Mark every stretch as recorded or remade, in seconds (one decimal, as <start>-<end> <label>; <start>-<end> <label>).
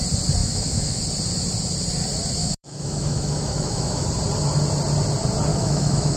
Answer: 0.0-0.4 recorded; 0.4-1.0 remade; 1.0-2.4 recorded; 2.4-4.0 remade; 4.0-5.5 recorded; 5.5-6.2 remade